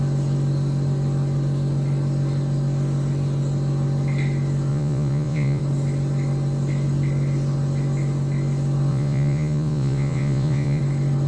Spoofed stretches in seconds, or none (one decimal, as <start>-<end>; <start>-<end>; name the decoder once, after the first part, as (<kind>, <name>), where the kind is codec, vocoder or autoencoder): 4.7-5.6 (vocoder, Vocos); 8.9-10.8